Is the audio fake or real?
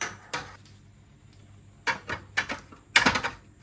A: real